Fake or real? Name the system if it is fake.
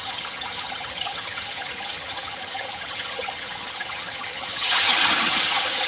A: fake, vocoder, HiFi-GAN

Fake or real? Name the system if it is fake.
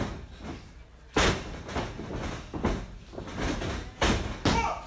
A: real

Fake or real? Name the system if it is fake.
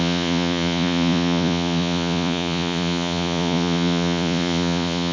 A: fake, vocoder, Vocos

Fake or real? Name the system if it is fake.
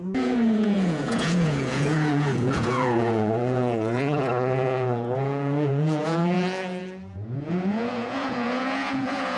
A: fake, vocoder, Vocos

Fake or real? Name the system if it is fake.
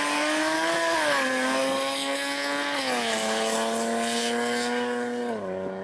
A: fake, codec, DAC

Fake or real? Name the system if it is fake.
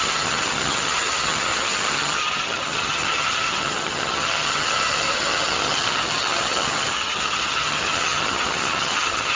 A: fake, vocoder, HiFi-GAN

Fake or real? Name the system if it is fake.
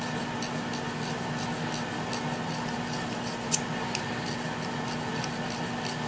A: real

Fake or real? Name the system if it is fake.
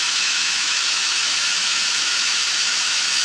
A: fake, autoencoder, DAC-VAE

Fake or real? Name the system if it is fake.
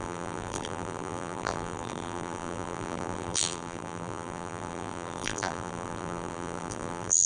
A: fake, vocoder, BigVGAN v2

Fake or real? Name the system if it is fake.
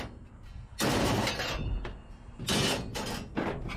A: real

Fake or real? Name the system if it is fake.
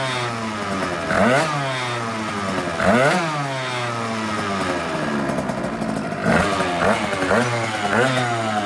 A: real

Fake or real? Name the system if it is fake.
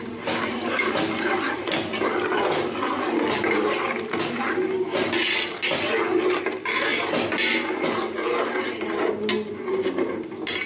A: real